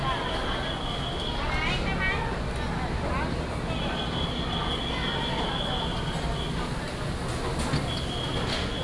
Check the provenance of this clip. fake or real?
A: real